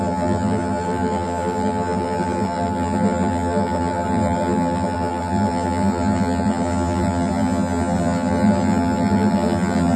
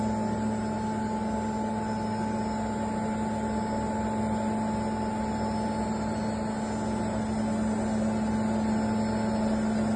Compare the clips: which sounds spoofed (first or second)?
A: first